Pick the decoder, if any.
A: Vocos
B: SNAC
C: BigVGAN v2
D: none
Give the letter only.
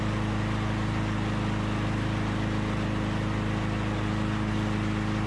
D